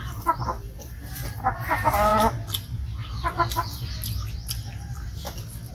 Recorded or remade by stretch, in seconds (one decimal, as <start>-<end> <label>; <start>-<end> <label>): 0.0-5.7 recorded